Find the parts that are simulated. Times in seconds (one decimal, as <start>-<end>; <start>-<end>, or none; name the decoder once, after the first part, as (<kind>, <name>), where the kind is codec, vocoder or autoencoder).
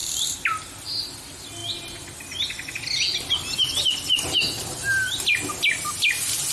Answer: 0.0-1.1 (vocoder, BigVGAN v2)